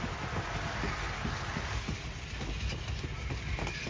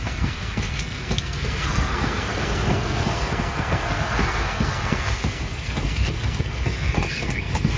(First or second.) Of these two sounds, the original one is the first